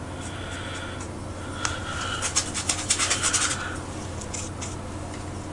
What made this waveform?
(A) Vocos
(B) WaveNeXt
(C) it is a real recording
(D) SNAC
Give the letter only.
C